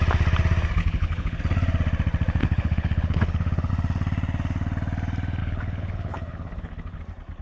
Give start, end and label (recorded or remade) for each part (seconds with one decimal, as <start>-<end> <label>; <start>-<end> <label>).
0.0-0.8 recorded; 0.8-1.4 remade; 1.4-2.4 recorded; 2.4-3.7 remade; 3.7-5.4 recorded; 5.4-7.0 remade; 7.0-7.4 recorded

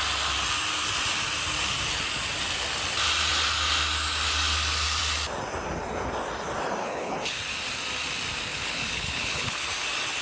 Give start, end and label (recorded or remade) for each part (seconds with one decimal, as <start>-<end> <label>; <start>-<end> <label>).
0.0-6.8 recorded; 6.8-7.4 remade; 7.4-8.5 recorded; 8.5-9.7 remade; 9.7-10.2 recorded

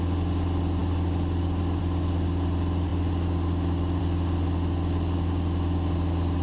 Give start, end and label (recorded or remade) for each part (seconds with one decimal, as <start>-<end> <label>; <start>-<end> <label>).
0.0-6.4 recorded

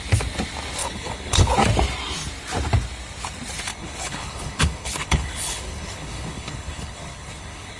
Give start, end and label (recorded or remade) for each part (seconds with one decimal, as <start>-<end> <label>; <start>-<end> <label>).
0.0-0.8 recorded; 0.8-1.5 remade; 1.5-3.7 recorded; 3.7-7.8 remade

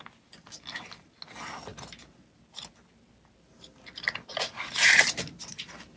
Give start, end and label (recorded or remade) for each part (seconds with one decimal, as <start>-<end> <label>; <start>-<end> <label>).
0.0-6.0 recorded

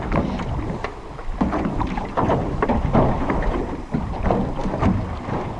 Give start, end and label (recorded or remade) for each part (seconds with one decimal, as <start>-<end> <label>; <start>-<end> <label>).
0.0-5.6 recorded

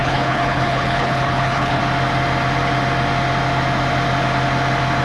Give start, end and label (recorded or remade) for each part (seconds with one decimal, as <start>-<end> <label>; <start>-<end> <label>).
0.0-1.8 remade; 1.8-5.0 recorded

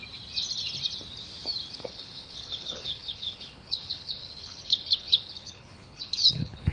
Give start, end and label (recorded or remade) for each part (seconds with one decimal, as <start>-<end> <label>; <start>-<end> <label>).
0.0-1.9 recorded; 1.9-6.7 remade